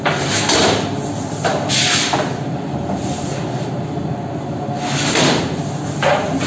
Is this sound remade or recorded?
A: recorded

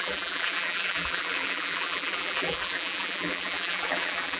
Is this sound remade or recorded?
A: remade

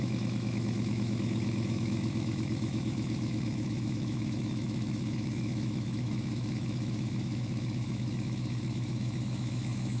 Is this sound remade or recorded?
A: remade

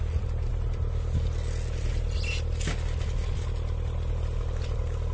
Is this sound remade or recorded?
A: recorded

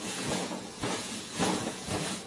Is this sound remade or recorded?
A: remade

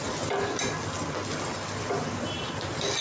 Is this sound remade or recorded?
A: recorded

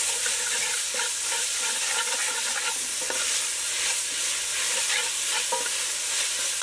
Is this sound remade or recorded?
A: recorded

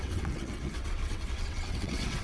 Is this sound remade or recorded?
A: remade